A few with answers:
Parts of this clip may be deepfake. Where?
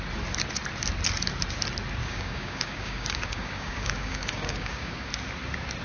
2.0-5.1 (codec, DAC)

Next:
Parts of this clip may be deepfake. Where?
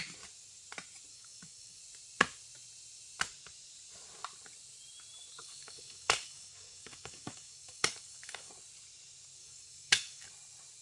1.1-1.8 (codec, DAC); 5.4-8.5; 9.4-10.3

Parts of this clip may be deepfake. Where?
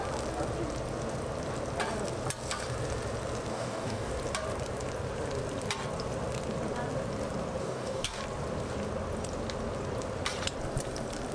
3.5-4.1 (codec, DAC); 7.6-8.2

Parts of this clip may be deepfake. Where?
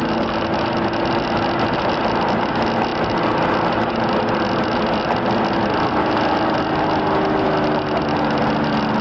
none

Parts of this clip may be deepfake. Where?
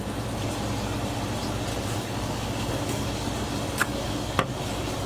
1.7-3.3 (codec, DAC); 3.8-4.5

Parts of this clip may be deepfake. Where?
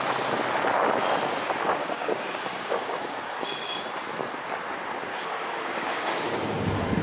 1.8-3.8 (codec, DAC); 5.1-6.1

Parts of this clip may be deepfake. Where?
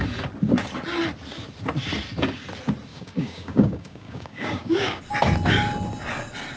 2.9-5.0 (codec, DAC)